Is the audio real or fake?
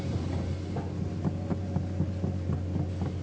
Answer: real